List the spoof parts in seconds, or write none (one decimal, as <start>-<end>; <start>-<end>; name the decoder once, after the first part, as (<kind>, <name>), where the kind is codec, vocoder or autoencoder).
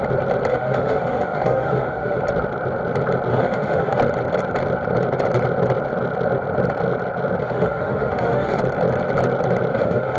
0.5-2.2 (autoencoder, DAC-VAE); 3.3-4.0; 7.4-8.6; 9.7-10.2